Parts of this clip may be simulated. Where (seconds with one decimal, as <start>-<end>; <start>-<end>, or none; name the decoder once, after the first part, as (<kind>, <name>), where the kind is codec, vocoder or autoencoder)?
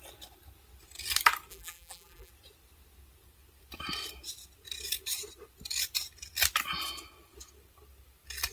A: 1.5-2.3 (vocoder, BigVGAN v2)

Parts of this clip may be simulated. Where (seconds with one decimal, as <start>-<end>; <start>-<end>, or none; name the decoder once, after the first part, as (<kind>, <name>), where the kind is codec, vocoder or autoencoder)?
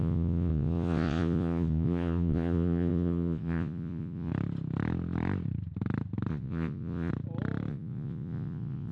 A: 0.0-4.3 (vocoder, Vocos); 6.3-7.1; 7.7-8.9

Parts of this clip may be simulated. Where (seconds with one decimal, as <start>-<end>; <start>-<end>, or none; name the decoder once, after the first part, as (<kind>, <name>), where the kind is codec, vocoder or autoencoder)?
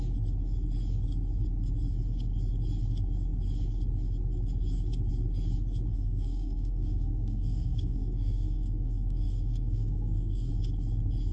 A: 5.9-10.5 (codec, SNAC)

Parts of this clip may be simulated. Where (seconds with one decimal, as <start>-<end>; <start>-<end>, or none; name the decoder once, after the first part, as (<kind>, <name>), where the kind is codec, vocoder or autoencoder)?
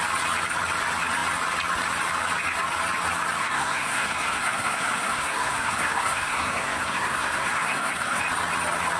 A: 3.4-8.2 (codec, SNAC)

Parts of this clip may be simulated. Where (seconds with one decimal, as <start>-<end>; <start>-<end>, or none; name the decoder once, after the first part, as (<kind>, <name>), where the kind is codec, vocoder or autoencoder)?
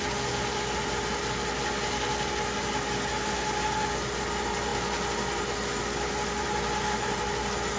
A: none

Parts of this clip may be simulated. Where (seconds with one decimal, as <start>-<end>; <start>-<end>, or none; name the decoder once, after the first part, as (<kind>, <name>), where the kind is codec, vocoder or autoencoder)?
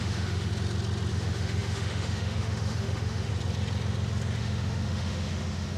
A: 0.0-0.5 (autoencoder, DAC-VAE); 1.1-3.3; 4.4-5.8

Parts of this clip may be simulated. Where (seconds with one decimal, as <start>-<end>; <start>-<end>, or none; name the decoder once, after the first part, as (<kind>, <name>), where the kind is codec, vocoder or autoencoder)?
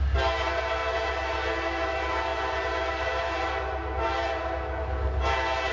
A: none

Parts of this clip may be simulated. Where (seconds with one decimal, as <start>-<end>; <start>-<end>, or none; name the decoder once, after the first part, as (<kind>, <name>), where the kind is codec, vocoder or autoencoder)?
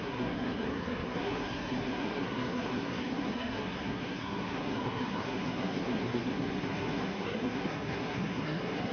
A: 0.0-8.9 (codec, SNAC)